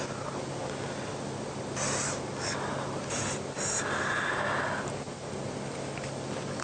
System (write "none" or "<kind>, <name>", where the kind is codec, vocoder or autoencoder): none